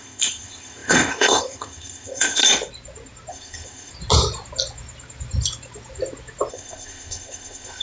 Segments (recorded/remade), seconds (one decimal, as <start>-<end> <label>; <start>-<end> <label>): 0.0-2.4 remade; 2.4-3.3 recorded; 3.3-3.9 remade; 3.9-6.5 recorded; 6.5-7.8 remade